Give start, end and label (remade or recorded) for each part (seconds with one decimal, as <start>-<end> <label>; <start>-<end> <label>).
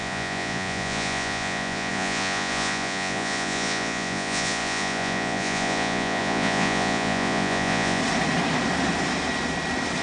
0.0-8.0 remade; 8.0-10.0 recorded